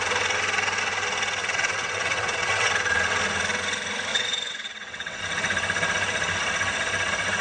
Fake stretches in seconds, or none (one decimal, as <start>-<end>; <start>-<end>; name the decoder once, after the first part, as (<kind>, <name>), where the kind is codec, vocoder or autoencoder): 1.4-2.7 (vocoder, WaveNeXt); 4.1-5.2